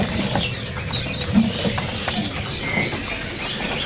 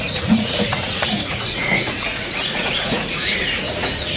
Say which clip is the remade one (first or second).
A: second